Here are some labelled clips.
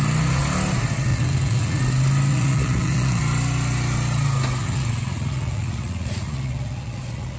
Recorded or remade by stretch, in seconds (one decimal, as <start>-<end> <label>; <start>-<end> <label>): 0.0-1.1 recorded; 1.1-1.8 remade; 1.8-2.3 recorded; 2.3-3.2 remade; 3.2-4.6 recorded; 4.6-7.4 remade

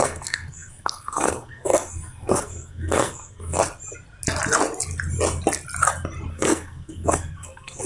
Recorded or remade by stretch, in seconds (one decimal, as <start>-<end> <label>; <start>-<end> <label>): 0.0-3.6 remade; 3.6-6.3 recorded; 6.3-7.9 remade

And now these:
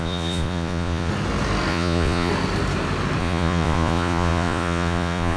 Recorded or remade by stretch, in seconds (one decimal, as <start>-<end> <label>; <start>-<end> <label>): 0.0-1.1 remade; 1.1-1.7 recorded; 1.7-2.3 remade; 2.3-3.2 recorded; 3.2-5.4 remade

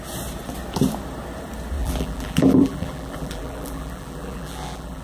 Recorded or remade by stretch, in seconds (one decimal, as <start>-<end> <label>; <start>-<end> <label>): 0.0-1.8 recorded; 1.8-5.0 remade

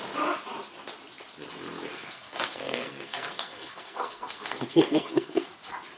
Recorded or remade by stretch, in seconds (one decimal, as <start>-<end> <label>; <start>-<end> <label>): 0.0-1.9 recorded; 1.9-5.5 remade; 5.5-6.0 recorded